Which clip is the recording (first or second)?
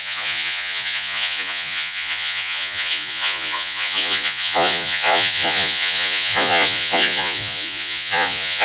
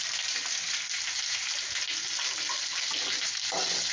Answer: second